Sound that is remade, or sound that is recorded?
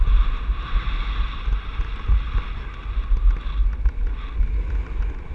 recorded